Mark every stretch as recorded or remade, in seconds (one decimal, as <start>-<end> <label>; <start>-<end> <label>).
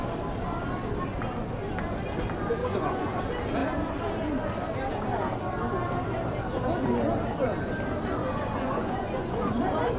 0.0-2.6 recorded; 2.6-3.2 remade; 3.2-8.2 recorded; 8.2-9.6 remade; 9.6-10.0 recorded